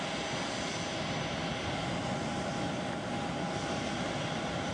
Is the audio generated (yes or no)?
no